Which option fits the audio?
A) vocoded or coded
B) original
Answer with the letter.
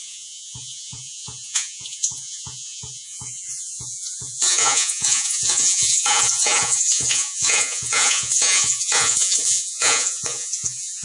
A